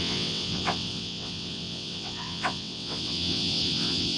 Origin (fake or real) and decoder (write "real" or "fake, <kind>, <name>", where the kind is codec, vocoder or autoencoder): fake, vocoder, WaveNeXt